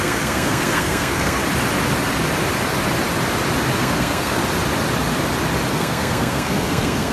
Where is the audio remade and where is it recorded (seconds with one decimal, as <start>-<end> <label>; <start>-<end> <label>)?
0.0-1.4 remade; 1.4-3.8 recorded; 3.8-4.4 remade; 4.4-5.7 recorded; 5.7-7.1 remade